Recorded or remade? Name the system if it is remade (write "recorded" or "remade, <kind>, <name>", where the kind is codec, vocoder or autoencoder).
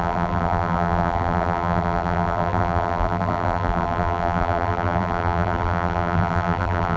remade, vocoder, BigVGAN v2